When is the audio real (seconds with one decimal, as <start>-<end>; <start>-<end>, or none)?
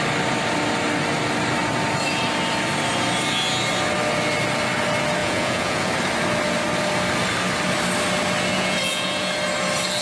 0.0-5.2; 5.9-8.5; 9.3-10.0